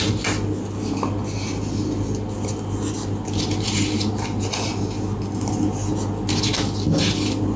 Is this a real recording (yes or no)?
yes